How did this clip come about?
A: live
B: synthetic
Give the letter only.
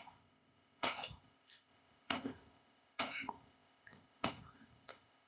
B